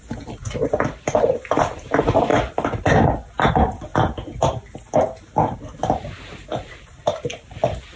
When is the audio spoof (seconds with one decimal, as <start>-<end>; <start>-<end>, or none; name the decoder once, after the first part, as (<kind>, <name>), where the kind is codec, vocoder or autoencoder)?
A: 0.0-2.3 (vocoder, BigVGAN v2); 3.5-3.9; 5.5-8.0